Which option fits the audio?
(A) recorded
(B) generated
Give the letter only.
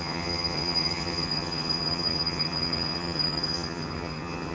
B